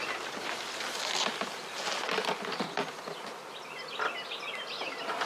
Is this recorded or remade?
recorded